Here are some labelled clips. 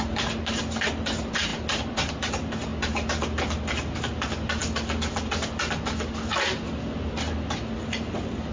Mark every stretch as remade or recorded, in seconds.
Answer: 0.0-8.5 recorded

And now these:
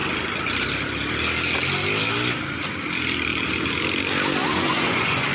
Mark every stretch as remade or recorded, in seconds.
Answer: 0.0-4.4 recorded; 4.4-5.3 remade

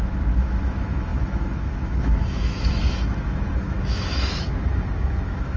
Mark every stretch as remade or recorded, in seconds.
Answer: 0.0-5.6 remade

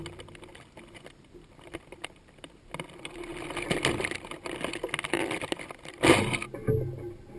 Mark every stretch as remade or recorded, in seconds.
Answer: 0.0-7.4 recorded

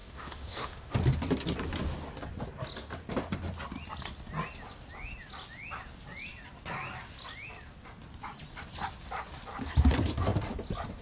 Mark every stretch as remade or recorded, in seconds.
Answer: 0.0-1.0 remade; 1.0-11.0 recorded

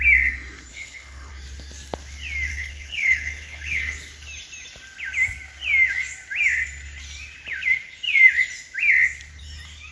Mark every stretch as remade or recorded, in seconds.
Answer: 0.0-0.7 recorded; 0.7-1.3 remade; 1.3-2.5 recorded; 2.5-3.8 remade; 3.8-9.9 recorded